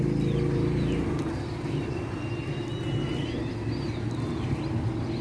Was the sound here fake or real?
real